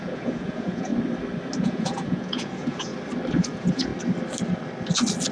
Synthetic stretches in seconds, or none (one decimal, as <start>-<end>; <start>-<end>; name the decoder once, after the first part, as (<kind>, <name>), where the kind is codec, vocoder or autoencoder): 0.0-0.9 (vocoder, Vocos); 1.6-2.9; 3.4-3.9